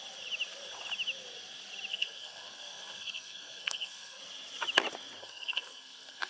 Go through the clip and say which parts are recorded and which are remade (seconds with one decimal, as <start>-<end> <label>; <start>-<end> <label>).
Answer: 0.0-1.9 recorded; 1.9-4.2 remade; 4.2-5.2 recorded; 5.2-6.3 remade